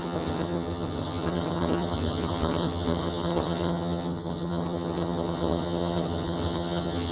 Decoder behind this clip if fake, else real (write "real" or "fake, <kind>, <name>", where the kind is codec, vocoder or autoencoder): fake, vocoder, HiFi-GAN